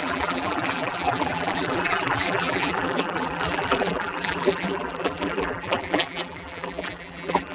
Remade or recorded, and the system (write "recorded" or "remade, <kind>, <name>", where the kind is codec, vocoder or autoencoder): remade, vocoder, BigVGAN v2